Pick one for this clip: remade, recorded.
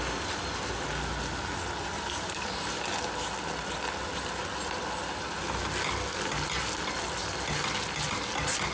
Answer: recorded